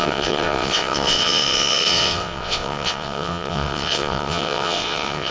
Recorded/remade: remade